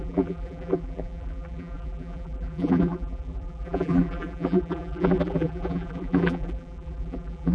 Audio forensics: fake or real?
fake